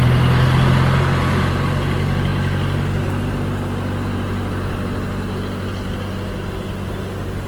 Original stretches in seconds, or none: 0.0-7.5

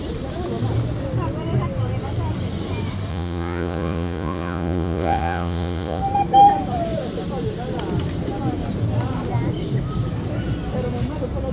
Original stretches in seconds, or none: 0.0-3.1; 6.0-11.5

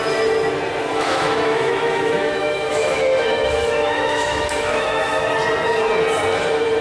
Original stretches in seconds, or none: 0.0-0.9; 5.0-6.8